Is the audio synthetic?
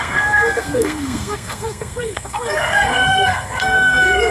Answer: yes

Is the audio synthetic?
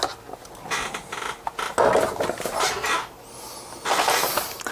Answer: no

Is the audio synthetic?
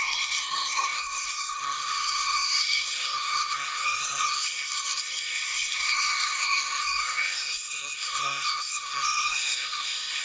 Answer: yes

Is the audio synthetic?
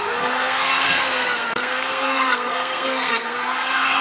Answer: yes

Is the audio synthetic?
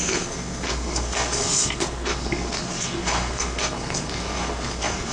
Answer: yes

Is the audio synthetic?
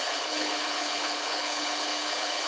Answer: yes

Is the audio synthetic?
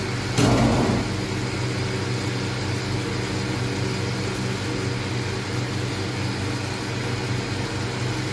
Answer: no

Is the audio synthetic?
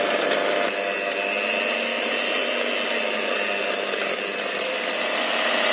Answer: no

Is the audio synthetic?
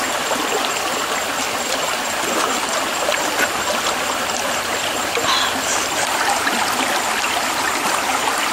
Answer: no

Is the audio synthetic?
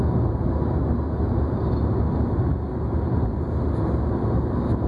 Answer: no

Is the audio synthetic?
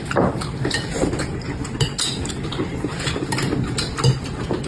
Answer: no